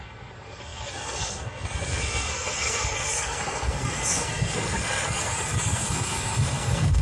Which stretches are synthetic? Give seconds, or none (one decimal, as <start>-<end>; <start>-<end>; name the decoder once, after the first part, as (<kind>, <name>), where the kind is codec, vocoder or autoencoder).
0.0-7.0 (codec, SNAC)